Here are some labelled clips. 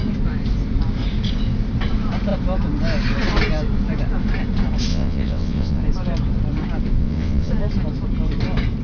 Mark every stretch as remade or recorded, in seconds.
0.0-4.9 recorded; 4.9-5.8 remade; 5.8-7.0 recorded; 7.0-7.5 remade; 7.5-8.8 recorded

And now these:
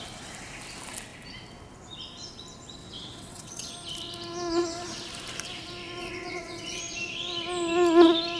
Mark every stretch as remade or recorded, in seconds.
0.0-2.8 recorded; 2.8-3.7 remade; 3.7-6.0 recorded; 6.0-6.8 remade; 6.8-8.4 recorded